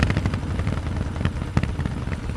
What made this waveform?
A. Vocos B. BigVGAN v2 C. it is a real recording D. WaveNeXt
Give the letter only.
C